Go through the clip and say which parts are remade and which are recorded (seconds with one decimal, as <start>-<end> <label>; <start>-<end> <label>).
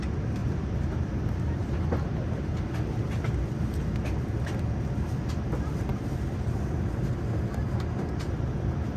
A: 0.0-0.4 recorded; 0.4-1.0 remade; 1.0-9.0 recorded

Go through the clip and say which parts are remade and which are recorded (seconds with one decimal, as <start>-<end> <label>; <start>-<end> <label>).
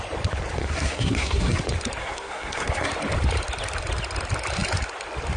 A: 0.0-0.6 recorded; 0.6-1.6 remade; 1.6-2.0 recorded; 2.0-2.9 remade; 2.9-5.4 recorded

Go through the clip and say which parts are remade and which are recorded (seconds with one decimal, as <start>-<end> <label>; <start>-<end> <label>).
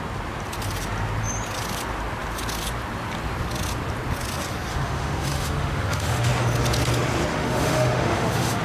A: 0.0-4.7 recorded; 4.7-6.3 remade; 6.3-7.3 recorded; 7.3-8.6 remade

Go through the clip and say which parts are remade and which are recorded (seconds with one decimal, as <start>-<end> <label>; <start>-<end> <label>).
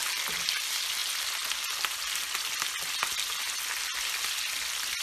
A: 0.0-5.0 recorded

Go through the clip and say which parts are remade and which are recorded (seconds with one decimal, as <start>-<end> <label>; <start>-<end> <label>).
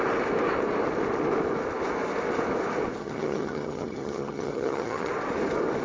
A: 0.0-3.0 recorded; 3.0-5.1 remade; 5.1-5.8 recorded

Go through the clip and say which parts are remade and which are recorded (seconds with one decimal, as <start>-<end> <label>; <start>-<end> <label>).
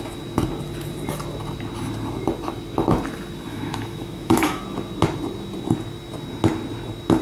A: 0.0-3.5 recorded; 3.5-4.6 remade; 4.6-7.2 recorded